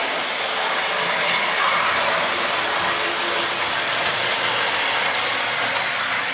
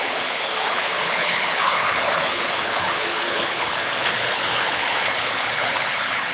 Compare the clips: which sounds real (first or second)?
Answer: first